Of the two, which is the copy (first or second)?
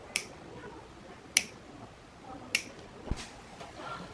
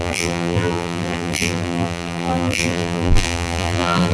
second